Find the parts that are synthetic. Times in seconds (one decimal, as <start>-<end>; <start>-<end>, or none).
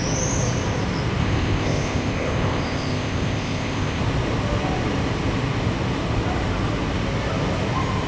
1.2-4.0